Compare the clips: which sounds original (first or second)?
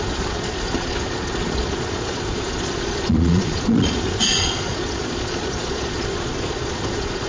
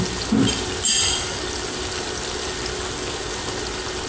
second